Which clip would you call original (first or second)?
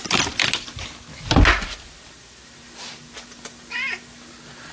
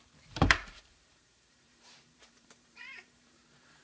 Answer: first